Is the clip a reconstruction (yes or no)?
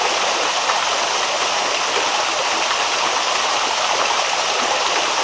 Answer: no